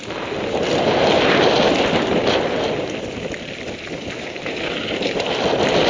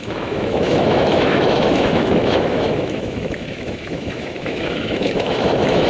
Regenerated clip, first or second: second